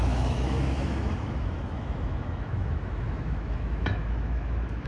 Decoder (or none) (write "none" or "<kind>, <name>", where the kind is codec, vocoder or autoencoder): autoencoder, DAC-VAE